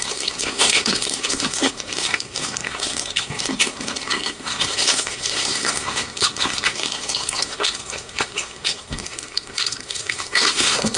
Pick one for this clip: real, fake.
fake